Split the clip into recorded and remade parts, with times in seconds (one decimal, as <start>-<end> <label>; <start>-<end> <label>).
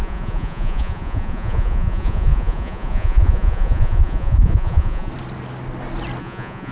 0.0-5.1 remade; 5.1-6.2 recorded; 6.2-6.7 remade